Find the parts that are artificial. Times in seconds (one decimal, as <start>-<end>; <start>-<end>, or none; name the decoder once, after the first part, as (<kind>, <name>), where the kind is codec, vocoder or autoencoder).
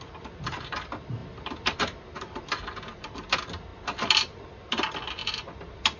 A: none